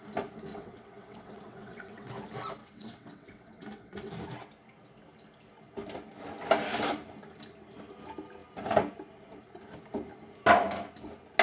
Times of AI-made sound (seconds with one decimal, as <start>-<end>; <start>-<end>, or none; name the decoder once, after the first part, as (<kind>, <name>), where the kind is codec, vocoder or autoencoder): 0.5-2.1 (vocoder, WaveNeXt); 2.6-4.1